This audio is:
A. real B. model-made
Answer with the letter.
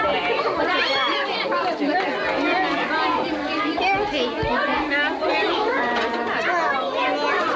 A